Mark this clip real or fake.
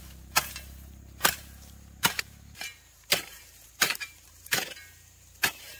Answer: fake